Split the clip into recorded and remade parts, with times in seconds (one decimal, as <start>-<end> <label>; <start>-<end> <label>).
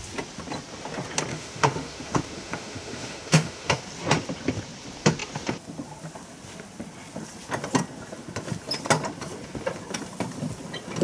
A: 0.0-1.3 recorded; 1.3-3.8 remade; 3.8-11.0 recorded